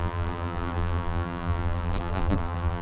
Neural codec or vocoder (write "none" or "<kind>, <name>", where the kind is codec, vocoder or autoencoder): vocoder, BigVGAN v2